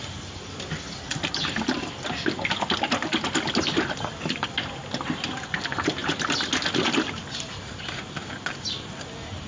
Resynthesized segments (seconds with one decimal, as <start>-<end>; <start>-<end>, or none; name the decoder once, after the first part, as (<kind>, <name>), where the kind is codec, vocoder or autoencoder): none